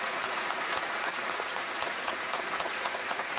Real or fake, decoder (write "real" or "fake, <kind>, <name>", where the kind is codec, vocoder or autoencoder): fake, vocoder, Vocos